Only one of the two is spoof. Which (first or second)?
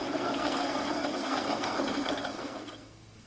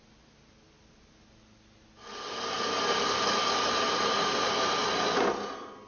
first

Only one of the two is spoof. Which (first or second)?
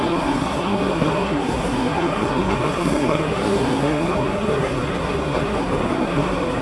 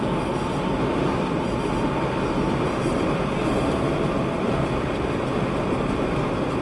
first